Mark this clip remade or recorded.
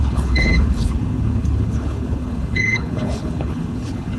remade